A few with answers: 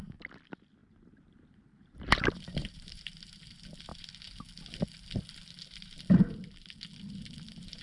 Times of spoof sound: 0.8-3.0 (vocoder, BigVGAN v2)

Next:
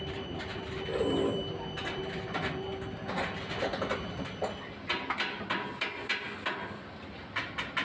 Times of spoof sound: 0.0-2.7 (vocoder, BigVGAN v2); 5.5-6.1; 6.9-7.8